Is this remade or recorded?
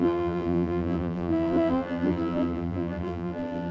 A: remade